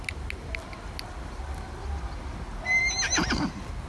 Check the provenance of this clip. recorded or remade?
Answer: recorded